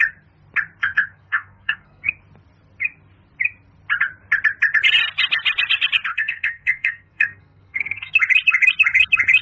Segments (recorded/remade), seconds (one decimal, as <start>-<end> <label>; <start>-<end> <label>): 0.0-0.8 recorded; 0.8-2.1 remade; 2.1-6.1 recorded; 6.1-8.1 remade; 8.1-9.4 recorded